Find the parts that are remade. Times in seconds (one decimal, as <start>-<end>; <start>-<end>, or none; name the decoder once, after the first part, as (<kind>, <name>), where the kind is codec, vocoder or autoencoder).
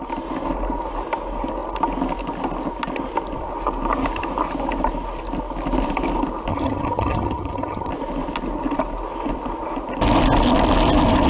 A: 6.5-7.9 (vocoder, HiFi-GAN)